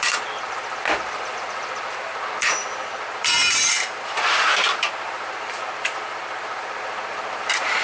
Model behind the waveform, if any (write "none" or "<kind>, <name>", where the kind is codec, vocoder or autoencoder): vocoder, BigVGAN v2